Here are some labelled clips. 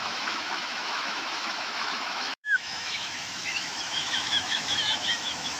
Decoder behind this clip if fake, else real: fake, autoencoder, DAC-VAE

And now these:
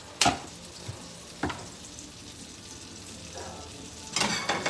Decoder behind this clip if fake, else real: real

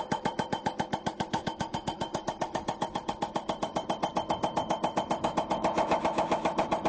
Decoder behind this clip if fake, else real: fake, autoencoder, DAC-VAE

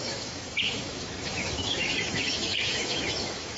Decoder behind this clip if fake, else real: fake, autoencoder, DAC-VAE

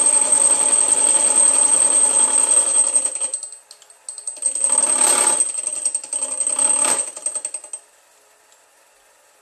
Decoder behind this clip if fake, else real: real